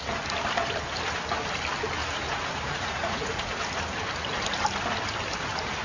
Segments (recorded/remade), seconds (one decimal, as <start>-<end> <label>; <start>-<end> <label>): 0.0-2.0 recorded; 2.0-3.6 remade; 3.6-5.8 recorded